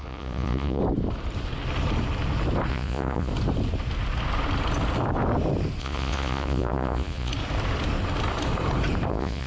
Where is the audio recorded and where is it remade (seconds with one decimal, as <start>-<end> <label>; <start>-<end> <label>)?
0.0-0.8 remade; 0.8-2.7 recorded; 2.7-3.3 remade; 3.3-5.8 recorded; 5.8-7.3 remade; 7.3-9.1 recorded; 9.1-9.5 remade